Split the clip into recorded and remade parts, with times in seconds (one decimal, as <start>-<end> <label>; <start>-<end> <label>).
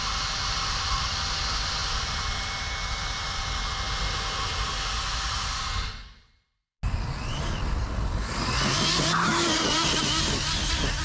0.0-1.8 recorded; 1.8-3.4 remade; 3.4-11.0 recorded